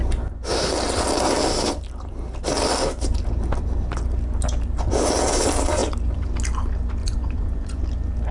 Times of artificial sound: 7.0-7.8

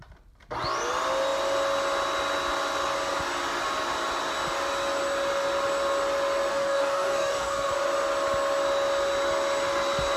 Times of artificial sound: 6.5-7.7

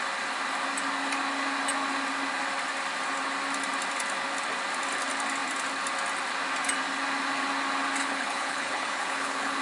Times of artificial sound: 8.0-9.6

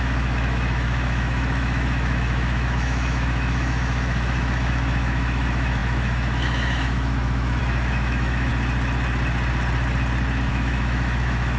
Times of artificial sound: 0.0-8.5; 10.5-11.6

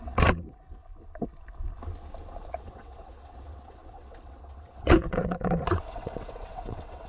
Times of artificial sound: 0.0-0.8; 2.5-7.1

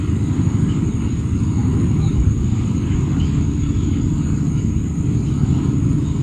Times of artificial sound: 0.0-6.2